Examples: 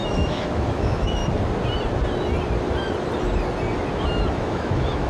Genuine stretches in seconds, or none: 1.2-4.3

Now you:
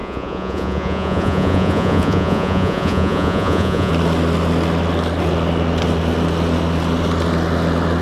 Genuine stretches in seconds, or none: 3.9-8.0

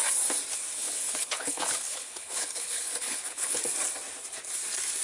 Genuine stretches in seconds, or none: 0.0-0.8; 3.6-5.0